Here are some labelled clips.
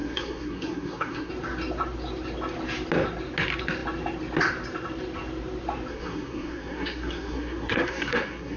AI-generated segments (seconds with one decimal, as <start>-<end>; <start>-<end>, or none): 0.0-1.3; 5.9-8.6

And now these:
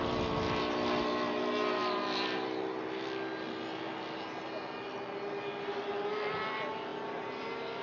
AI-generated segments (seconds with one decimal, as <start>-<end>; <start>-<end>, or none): none

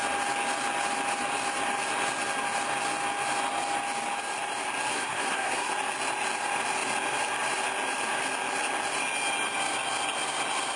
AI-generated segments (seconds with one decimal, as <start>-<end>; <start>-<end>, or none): 4.9-5.7